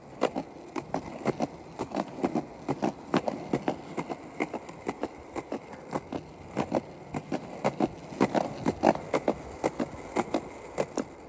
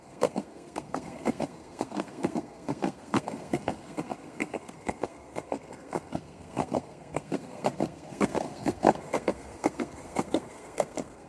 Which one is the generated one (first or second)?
second